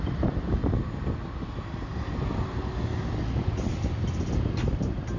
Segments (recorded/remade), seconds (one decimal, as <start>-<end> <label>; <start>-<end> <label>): 0.0-5.2 recorded